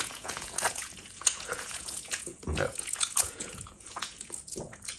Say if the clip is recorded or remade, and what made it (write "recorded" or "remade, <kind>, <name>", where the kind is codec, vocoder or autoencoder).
remade, vocoder, Vocos